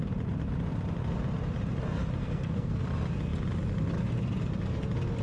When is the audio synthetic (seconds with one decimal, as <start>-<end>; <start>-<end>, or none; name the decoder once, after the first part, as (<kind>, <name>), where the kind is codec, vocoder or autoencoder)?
2.2-2.8 (codec, SNAC)